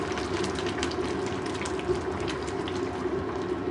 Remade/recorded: recorded